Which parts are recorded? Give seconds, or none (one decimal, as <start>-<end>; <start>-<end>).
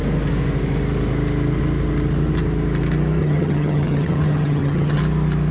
0.0-3.2; 5.0-5.5